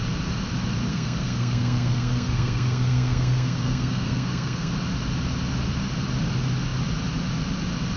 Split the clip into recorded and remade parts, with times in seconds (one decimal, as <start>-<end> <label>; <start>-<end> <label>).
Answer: 0.0-0.9 recorded; 0.9-4.7 remade; 4.7-8.0 recorded

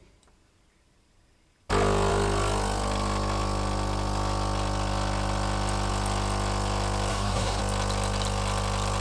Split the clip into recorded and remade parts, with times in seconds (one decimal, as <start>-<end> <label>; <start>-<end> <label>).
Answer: 0.0-7.1 recorded; 7.1-7.6 remade; 7.6-9.0 recorded